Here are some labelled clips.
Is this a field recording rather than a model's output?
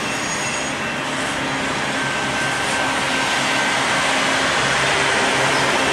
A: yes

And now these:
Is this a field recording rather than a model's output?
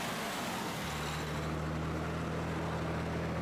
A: yes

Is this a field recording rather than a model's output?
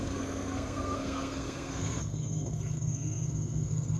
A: no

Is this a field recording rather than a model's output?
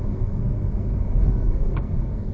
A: no